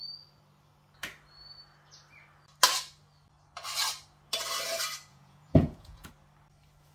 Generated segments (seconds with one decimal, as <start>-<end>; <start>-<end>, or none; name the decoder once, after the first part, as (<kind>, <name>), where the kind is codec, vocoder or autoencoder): 5.1-6.1 (vocoder, Vocos)